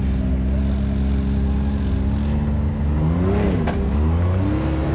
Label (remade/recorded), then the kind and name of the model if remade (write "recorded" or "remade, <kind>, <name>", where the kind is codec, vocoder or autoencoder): recorded